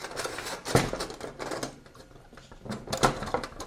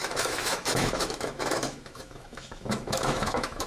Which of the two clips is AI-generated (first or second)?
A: second